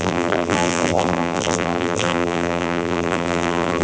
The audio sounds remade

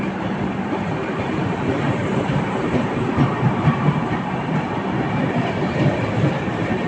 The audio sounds remade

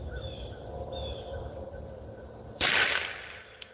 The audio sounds remade